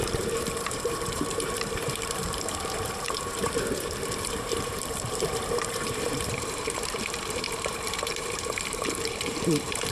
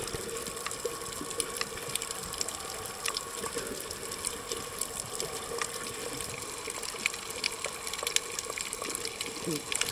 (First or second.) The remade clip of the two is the first